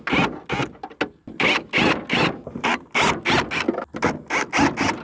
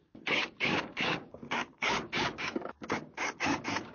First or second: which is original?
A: first